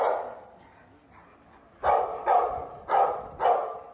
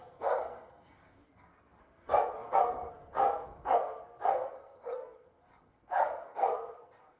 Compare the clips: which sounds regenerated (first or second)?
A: second